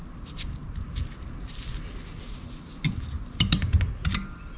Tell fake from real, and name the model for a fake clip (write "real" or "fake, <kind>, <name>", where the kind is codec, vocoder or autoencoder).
real